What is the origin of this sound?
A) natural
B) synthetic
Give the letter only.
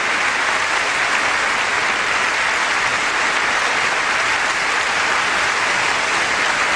A